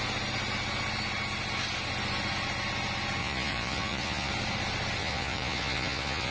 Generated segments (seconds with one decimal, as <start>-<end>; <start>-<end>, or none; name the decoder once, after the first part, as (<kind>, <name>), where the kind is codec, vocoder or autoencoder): 3.2-4.3 (vocoder, Vocos); 5.0-6.3